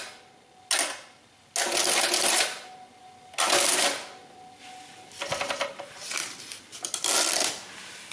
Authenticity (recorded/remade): recorded